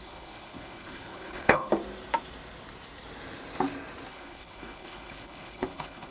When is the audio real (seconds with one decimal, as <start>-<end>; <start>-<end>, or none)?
1.7-4.1